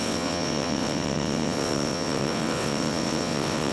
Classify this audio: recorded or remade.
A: remade